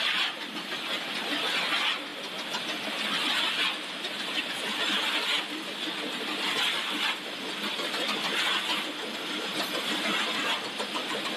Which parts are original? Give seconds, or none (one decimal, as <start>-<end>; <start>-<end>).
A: 0.0-11.4